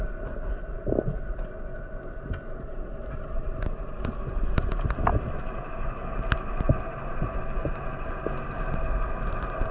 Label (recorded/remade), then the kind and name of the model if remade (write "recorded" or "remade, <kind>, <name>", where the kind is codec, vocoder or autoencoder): recorded